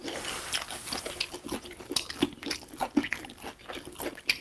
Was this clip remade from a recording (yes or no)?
no